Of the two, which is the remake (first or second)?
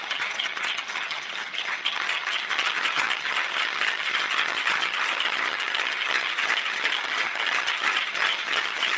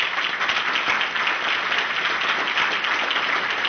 first